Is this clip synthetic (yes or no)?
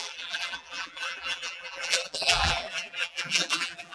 yes